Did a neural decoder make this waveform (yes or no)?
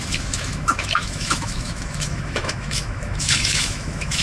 yes